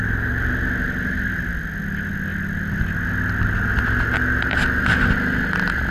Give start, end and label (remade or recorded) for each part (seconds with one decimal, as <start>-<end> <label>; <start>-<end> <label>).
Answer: 0.0-5.9 recorded